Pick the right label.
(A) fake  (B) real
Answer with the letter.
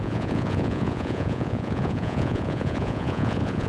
A